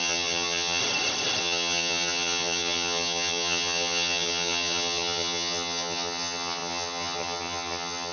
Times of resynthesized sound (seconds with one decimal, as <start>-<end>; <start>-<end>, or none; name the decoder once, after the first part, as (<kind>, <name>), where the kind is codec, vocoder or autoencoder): 0.0-0.8 (vocoder, HiFi-GAN); 1.4-8.1